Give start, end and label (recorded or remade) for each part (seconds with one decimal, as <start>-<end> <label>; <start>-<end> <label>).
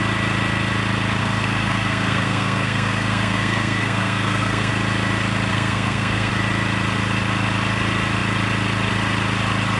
0.0-1.2 recorded; 1.2-4.7 remade; 4.7-5.5 recorded; 5.5-6.3 remade; 6.3-9.8 recorded